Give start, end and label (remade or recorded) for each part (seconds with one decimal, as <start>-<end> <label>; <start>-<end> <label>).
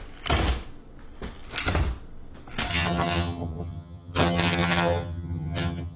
0.0-2.7 recorded; 2.7-6.0 remade